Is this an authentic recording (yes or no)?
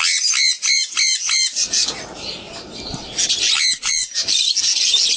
yes